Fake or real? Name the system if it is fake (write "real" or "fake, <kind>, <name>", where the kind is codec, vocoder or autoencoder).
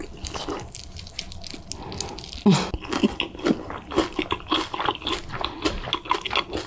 real